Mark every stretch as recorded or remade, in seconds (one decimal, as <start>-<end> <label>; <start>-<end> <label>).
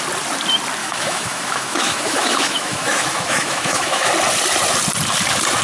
0.0-0.8 recorded; 0.8-4.1 remade; 4.1-5.6 recorded